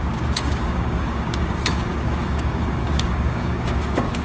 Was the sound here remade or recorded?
remade